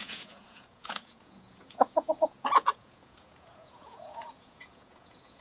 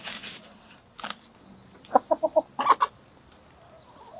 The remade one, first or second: first